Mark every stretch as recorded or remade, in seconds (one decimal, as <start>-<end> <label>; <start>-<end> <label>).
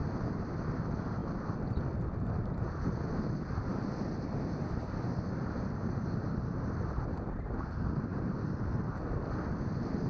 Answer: 0.0-3.7 recorded; 3.7-7.6 remade; 7.6-8.1 recorded; 8.1-8.9 remade; 8.9-10.1 recorded